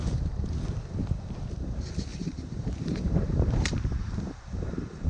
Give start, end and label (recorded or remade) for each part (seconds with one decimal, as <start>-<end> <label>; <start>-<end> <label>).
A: 0.0-2.1 recorded; 2.1-5.1 remade